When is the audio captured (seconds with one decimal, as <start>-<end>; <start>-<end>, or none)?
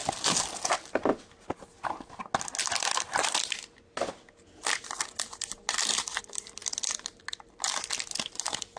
0.0-8.8